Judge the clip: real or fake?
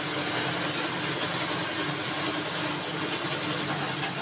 real